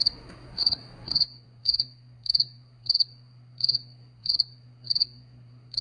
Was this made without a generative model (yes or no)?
no